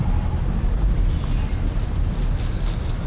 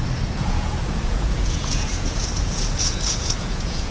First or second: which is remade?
second